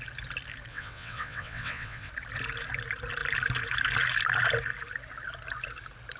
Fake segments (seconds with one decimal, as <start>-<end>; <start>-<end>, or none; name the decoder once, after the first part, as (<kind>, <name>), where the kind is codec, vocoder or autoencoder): 0.7-2.1 (vocoder, WaveNeXt)